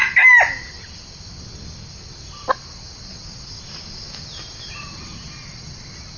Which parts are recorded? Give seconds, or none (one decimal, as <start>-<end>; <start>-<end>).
0.0-6.2